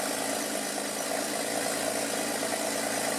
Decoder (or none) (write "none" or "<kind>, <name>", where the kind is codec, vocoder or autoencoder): none